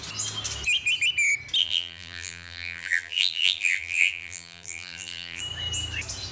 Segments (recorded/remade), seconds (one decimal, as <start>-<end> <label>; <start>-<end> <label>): 0.0-1.6 recorded; 1.6-5.4 remade; 5.4-6.3 recorded